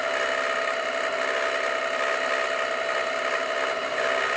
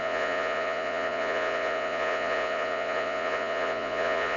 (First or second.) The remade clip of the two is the second